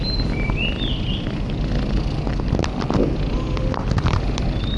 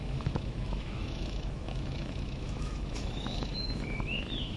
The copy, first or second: second